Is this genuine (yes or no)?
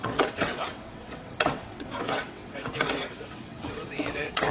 no